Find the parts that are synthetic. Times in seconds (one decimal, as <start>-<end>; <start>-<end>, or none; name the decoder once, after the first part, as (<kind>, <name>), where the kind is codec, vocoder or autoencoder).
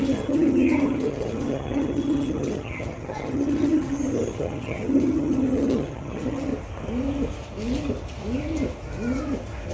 0.0-6.5 (vocoder, HiFi-GAN)